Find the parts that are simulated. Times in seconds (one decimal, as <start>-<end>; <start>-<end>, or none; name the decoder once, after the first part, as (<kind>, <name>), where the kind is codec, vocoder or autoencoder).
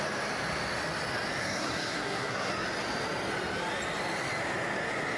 1.4-2.5 (codec, SNAC)